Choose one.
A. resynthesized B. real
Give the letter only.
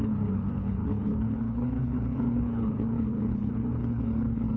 A